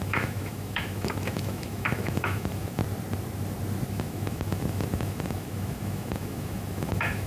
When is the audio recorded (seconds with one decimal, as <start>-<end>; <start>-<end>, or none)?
2.8-3.9